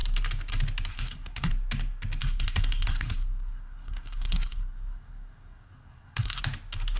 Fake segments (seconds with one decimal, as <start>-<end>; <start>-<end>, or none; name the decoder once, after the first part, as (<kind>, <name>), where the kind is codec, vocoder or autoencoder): 0.9-1.5 (codec, SNAC); 2.2-6.4